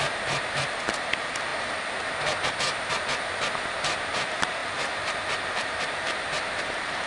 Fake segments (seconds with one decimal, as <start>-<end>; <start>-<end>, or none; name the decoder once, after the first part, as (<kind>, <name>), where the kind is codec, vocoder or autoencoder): 0.0-1.5 (vocoder, BigVGAN v2); 2.7-7.1

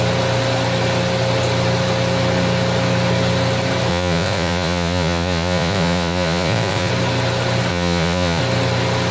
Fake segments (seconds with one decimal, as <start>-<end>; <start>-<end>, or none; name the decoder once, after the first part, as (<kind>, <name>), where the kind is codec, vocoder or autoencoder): 3.9-6.9 (vocoder, Vocos); 7.7-8.4

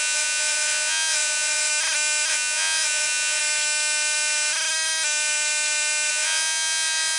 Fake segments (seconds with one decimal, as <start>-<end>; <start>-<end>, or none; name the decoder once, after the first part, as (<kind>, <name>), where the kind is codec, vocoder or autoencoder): 0.0-1.7 (vocoder, Vocos); 2.3-3.4; 6.1-7.2

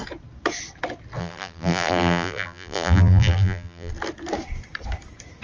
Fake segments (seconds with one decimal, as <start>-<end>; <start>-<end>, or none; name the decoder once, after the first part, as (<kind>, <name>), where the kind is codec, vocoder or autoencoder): 1.2-3.9 (vocoder, BigVGAN v2)

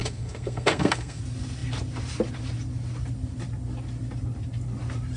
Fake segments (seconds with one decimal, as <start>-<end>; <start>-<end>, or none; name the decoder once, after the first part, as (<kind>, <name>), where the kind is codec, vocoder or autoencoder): 0.0-1.2 (codec, SNAC)

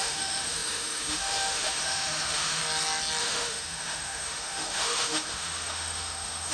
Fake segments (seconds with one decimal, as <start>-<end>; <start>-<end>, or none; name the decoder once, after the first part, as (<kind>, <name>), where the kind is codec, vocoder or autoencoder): 0.0-2.6 (autoencoder, DAC-VAE); 3.2-6.5

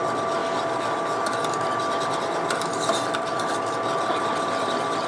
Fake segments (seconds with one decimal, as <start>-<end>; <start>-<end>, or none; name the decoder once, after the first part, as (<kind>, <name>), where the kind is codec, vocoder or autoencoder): none

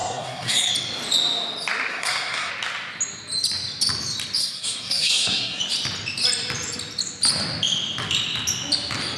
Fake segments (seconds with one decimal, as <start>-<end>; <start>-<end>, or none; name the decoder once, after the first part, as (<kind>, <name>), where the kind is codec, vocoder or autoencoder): 0.0-0.7 (codec, SNAC); 1.9-2.5; 4.4-5.6